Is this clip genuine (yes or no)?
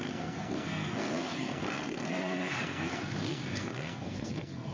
no